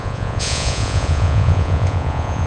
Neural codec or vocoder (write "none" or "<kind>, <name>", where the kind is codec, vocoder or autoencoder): vocoder, Vocos